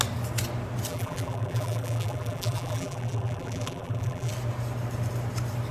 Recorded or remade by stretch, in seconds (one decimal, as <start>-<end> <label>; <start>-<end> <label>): 0.0-0.9 recorded; 0.9-4.3 remade; 4.3-5.7 recorded